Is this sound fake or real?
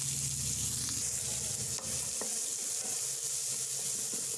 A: real